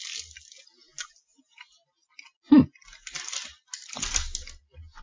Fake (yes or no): no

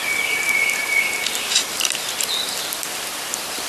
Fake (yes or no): no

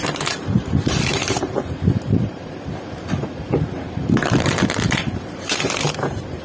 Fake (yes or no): yes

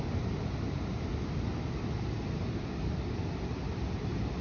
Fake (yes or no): no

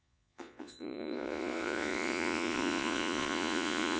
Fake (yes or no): yes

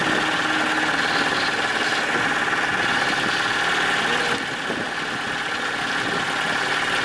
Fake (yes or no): no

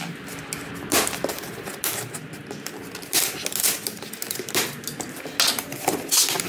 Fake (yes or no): no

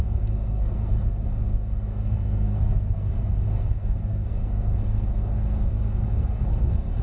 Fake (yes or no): yes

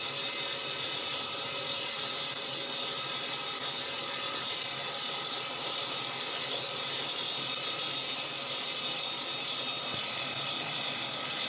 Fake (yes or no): no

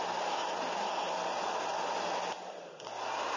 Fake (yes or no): no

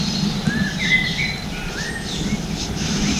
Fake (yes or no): no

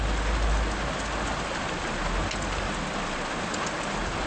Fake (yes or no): no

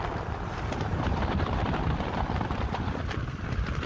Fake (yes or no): yes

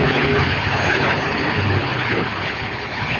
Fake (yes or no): yes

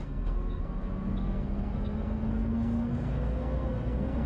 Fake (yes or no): yes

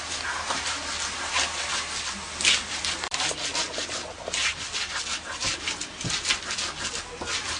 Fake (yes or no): no